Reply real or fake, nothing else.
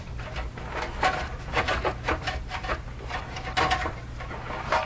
real